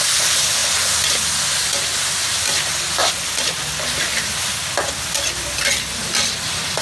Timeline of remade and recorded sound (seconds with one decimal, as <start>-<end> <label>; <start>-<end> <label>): 0.0-6.8 recorded